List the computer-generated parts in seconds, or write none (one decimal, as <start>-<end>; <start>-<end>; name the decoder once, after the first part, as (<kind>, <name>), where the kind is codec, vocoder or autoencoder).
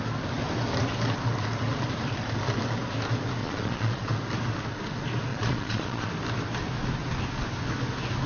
3.4-4.1 (vocoder, Vocos); 5.3-6.1